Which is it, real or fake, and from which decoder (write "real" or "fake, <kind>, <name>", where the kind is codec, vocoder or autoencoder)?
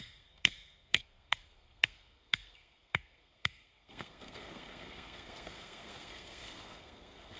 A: fake, codec, SNAC